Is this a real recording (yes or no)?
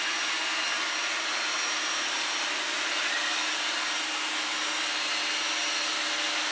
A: yes